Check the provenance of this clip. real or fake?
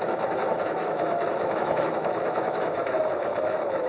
fake